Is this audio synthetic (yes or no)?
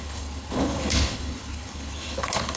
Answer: yes